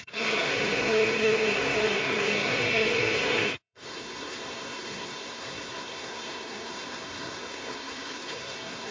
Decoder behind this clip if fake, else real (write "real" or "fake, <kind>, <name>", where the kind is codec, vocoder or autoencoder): fake, codec, SNAC